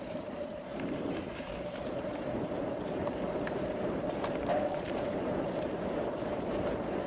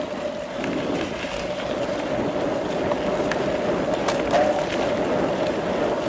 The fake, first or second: first